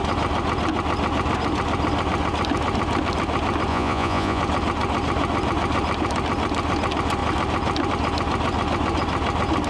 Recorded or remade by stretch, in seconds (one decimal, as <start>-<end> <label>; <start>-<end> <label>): 0.0-3.7 recorded; 3.7-4.4 remade; 4.4-9.7 recorded